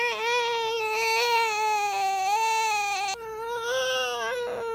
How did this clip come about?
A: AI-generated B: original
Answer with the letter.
B